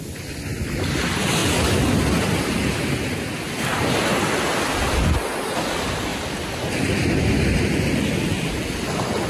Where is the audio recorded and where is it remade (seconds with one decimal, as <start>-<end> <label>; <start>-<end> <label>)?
0.0-9.3 recorded